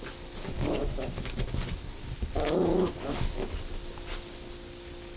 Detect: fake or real real